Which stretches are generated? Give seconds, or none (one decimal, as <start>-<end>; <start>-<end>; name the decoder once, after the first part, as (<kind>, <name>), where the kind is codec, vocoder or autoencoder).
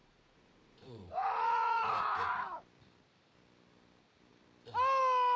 0.0-2.4 (vocoder, Vocos)